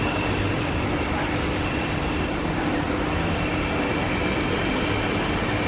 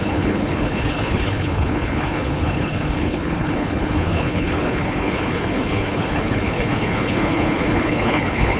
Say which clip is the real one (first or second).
first